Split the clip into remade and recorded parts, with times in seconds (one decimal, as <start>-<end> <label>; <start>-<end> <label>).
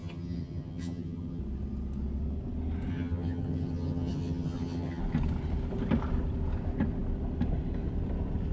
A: 0.0-1.4 remade; 1.4-2.9 recorded; 2.9-5.0 remade; 5.0-8.5 recorded